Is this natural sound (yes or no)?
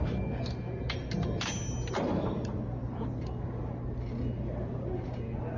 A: yes